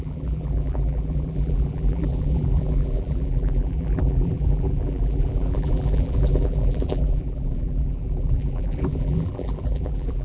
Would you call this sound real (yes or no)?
no